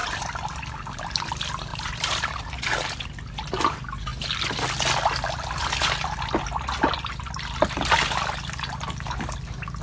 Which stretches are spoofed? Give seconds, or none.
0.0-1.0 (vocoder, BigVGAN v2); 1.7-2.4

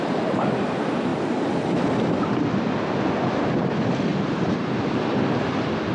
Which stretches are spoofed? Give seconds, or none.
4.1-5.2 (vocoder, BigVGAN v2)

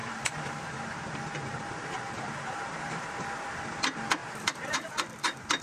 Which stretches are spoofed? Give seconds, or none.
0.0-3.0 (vocoder, BigVGAN v2); 4.2-4.9

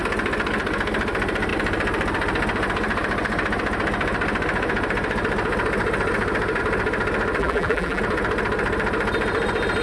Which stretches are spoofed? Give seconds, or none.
7.4-8.0 (vocoder, BigVGAN v2)